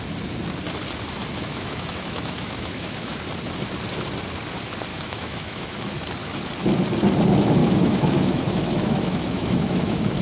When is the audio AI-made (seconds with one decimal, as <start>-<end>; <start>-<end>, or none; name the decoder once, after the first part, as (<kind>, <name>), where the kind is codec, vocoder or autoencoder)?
1.3-3.1 (autoencoder, DAC-VAE); 4.9-5.7; 7.6-10.2